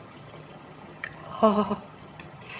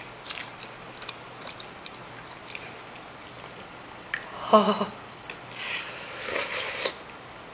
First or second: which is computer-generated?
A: first